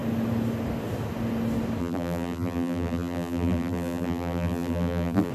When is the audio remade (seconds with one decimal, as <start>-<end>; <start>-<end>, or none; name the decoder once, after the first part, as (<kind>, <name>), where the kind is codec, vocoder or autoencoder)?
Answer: 1.8-5.3 (vocoder, BigVGAN v2)